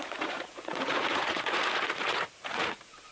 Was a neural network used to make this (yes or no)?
yes